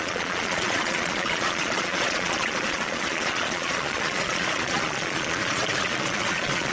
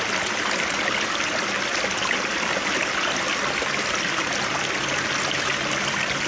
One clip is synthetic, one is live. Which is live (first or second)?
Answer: second